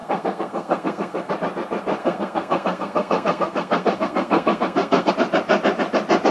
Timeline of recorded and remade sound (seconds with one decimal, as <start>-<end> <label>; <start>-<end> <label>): 0.0-1.3 remade; 1.3-2.0 recorded; 2.0-5.1 remade; 5.1-6.3 recorded

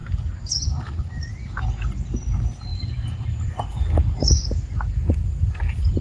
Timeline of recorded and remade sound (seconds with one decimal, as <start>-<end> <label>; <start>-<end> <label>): 0.0-4.2 recorded; 4.2-5.6 remade; 5.6-6.0 recorded